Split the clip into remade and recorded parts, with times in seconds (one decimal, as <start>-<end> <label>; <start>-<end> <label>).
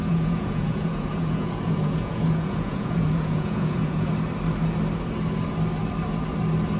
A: 0.0-4.1 remade; 4.1-6.8 recorded